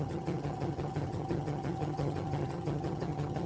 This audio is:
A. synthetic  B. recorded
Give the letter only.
A